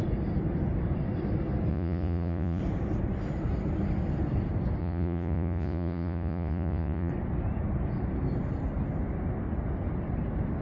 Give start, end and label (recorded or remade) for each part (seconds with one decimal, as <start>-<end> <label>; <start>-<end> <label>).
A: 0.0-1.7 recorded; 1.7-2.6 remade; 2.6-4.8 recorded; 4.8-7.1 remade; 7.1-10.6 recorded

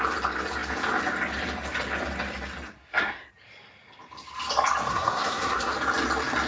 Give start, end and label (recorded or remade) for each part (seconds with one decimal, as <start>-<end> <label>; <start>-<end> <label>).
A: 0.0-2.8 recorded; 2.8-3.3 remade; 3.3-4.9 recorded; 4.9-5.7 remade; 5.7-6.5 recorded

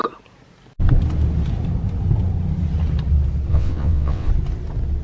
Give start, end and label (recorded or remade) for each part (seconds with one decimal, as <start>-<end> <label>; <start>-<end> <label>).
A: 0.0-3.5 recorded; 3.5-4.3 remade; 4.3-5.0 recorded

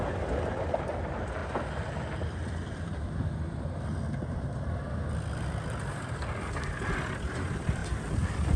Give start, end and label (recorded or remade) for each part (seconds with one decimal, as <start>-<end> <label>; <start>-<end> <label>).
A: 0.0-8.6 recorded